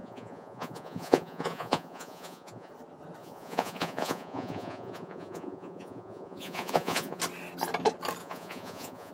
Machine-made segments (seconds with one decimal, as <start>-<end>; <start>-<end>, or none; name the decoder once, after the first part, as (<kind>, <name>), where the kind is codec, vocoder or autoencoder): 0.0-2.7 (vocoder, Vocos); 3.2-7.2; 8.2-9.1